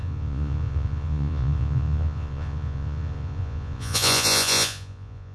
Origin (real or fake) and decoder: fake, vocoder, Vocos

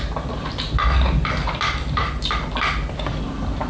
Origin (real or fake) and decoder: real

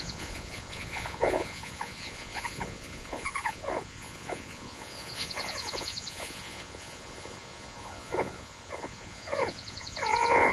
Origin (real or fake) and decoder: fake, vocoder, Vocos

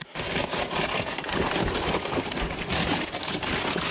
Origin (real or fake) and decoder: real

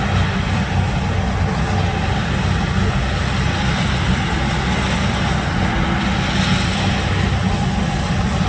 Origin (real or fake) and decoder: real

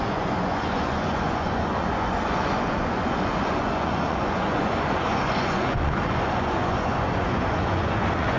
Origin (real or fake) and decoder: fake, vocoder, Vocos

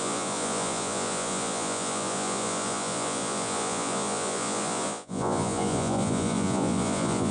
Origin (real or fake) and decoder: fake, vocoder, Vocos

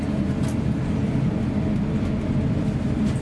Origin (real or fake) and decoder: real